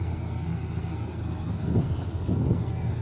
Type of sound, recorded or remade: remade